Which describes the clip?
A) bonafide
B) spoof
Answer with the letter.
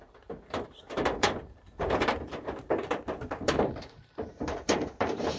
B